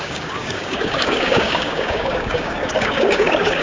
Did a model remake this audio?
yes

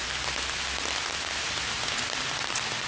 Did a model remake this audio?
no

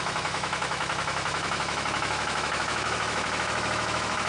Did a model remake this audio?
yes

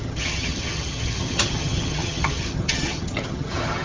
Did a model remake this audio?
yes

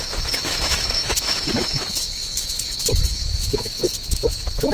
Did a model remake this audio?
yes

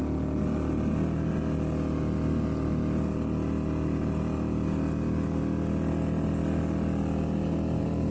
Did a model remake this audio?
no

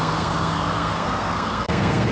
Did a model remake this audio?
yes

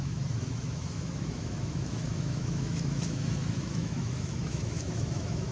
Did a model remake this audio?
yes